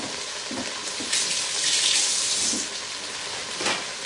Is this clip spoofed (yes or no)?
no